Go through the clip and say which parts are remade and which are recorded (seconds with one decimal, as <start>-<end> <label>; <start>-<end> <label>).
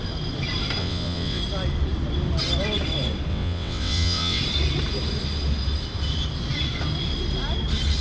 0.0-0.8 recorded; 0.8-1.4 remade; 1.4-3.3 recorded; 3.3-4.4 remade; 4.4-8.0 recorded